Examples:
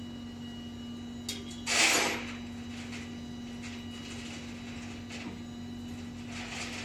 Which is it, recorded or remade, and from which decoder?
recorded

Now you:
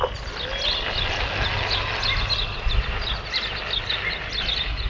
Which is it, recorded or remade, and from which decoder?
recorded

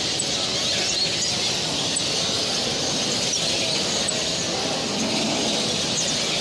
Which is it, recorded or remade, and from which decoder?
recorded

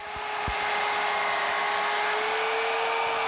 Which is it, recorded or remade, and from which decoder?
recorded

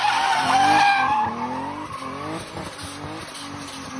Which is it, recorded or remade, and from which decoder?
recorded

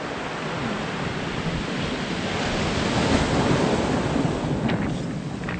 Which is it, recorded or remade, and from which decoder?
recorded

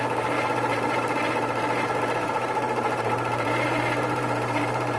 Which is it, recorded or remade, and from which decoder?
remade, vocoder, BigVGAN v2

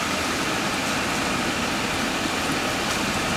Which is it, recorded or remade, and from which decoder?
recorded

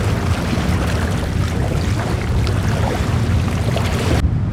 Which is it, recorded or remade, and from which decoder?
recorded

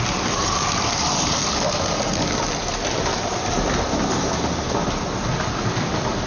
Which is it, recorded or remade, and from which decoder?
remade, vocoder, BigVGAN v2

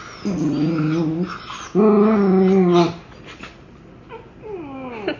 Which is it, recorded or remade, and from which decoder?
recorded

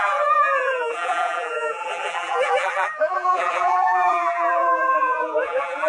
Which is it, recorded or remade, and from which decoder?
remade, vocoder, BigVGAN v2